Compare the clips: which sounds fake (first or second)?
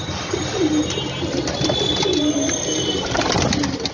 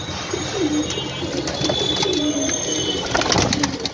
first